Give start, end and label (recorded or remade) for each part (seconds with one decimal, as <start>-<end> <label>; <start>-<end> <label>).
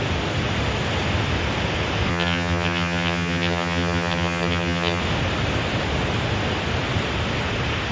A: 0.0-2.1 recorded; 2.1-5.0 remade; 5.0-7.9 recorded